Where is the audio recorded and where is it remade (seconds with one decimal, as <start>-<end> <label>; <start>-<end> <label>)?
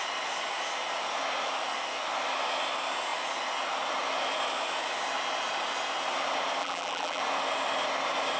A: 0.0-6.6 recorded; 6.6-7.2 remade; 7.2-8.4 recorded